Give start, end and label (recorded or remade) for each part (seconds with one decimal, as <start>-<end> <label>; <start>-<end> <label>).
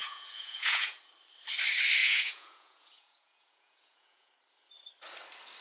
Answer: 0.0-1.0 remade; 1.0-2.0 recorded; 2.0-4.3 remade; 4.3-5.6 recorded